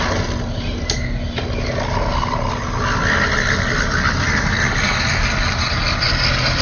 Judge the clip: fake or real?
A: real